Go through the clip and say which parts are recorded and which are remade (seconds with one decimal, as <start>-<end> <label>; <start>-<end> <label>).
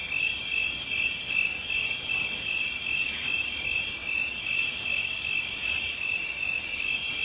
0.0-7.2 recorded